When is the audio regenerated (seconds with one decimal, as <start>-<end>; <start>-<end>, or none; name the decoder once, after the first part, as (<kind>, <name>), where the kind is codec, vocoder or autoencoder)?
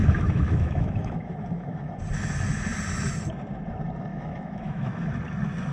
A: 0.0-1.9 (autoencoder, DAC-VAE); 4.1-5.1